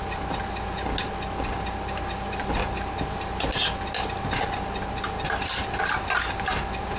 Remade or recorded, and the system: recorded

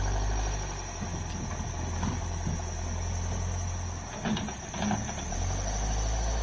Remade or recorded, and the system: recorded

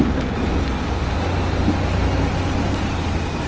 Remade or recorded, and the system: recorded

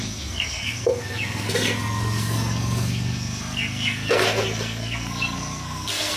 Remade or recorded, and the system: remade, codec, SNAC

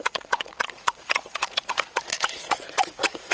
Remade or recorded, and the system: remade, vocoder, Vocos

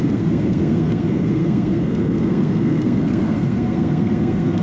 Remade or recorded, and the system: remade, codec, SNAC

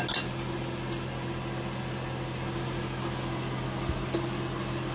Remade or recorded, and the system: recorded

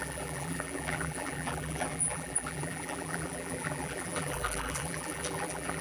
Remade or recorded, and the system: remade, vocoder, BigVGAN v2